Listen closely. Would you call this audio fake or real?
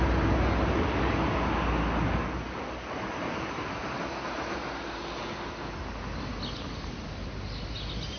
real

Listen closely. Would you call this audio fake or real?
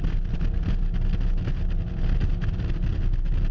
real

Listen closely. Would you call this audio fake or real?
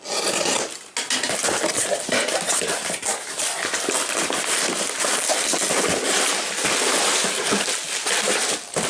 real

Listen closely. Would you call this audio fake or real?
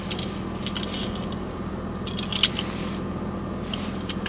real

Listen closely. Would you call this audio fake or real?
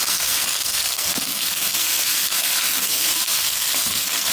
fake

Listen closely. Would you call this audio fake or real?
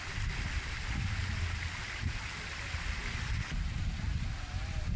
real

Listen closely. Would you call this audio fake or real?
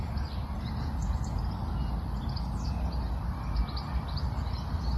real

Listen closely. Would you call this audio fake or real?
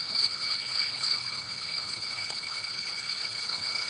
fake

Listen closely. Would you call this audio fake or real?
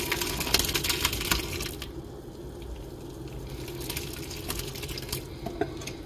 real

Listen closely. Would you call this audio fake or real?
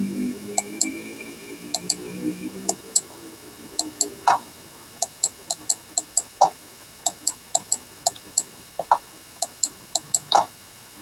fake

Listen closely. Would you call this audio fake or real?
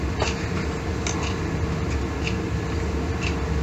real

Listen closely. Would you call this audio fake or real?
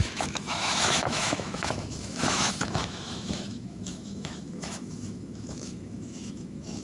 fake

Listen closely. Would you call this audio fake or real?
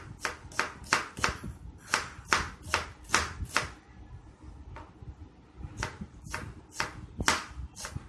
real